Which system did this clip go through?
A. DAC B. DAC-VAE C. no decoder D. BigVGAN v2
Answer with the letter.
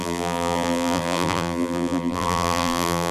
D